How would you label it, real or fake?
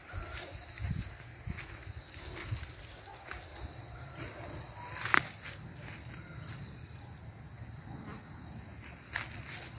real